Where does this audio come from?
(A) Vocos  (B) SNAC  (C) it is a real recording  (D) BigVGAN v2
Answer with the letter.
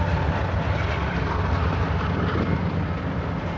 C